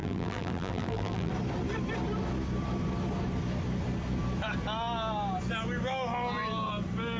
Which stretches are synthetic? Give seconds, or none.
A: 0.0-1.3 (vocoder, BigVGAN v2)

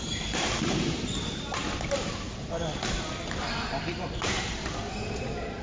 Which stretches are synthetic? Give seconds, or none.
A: 0.0-1.6 (vocoder, BigVGAN v2); 3.9-5.6

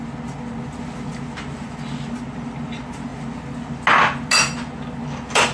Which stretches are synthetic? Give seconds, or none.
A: none